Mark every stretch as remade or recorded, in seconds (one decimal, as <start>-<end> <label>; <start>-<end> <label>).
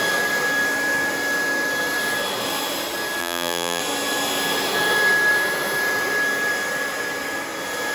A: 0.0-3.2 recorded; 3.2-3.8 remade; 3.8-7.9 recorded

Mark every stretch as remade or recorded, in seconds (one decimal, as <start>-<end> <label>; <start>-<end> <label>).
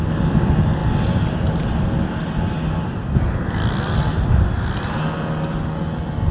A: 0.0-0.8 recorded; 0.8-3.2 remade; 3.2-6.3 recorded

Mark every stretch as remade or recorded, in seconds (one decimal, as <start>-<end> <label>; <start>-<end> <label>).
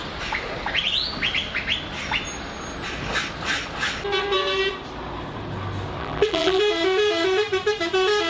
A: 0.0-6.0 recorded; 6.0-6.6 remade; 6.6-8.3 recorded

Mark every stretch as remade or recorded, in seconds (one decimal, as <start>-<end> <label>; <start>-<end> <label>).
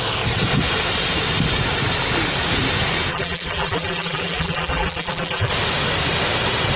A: 0.0-3.1 recorded; 3.1-5.5 remade; 5.5-6.8 recorded